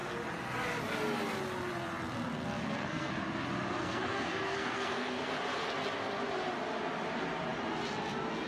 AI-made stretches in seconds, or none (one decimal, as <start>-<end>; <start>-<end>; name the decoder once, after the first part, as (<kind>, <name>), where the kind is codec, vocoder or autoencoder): 2.6-3.1 (codec, SNAC); 3.8-5.3

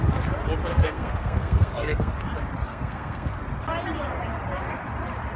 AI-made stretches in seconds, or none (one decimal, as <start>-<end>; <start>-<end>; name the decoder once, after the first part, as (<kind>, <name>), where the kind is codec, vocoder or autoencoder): 0.7-2.1 (codec, SNAC); 2.7-3.4